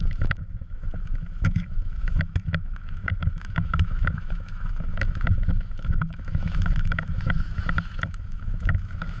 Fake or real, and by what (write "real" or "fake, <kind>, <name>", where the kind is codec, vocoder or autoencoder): fake, autoencoder, DAC-VAE